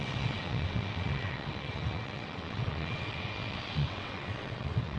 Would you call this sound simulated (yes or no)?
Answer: yes